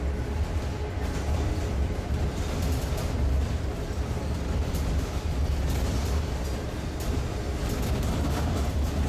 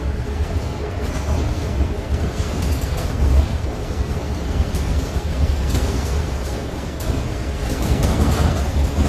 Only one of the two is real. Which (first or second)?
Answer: first